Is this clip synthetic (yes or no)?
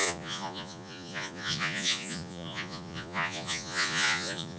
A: yes